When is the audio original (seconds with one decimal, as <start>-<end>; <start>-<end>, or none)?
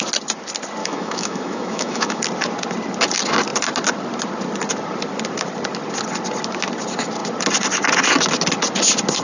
0.0-0.8; 2.2-9.2